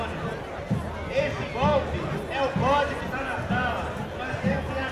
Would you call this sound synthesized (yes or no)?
no